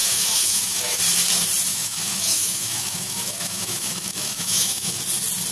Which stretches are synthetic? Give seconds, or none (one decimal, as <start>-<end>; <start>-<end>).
0.0-1.0; 1.7-5.0